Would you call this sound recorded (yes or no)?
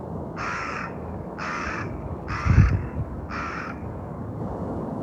no